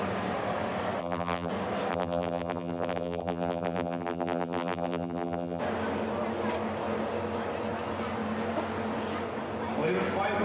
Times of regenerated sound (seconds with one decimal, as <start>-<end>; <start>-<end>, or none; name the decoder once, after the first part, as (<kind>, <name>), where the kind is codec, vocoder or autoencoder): 1.0-1.5 (vocoder, BigVGAN v2); 1.9-5.6